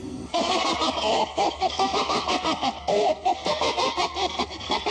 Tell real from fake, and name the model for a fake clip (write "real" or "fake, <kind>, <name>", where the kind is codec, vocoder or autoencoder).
fake, codec, SNAC